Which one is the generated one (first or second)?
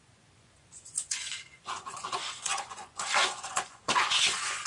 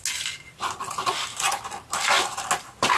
first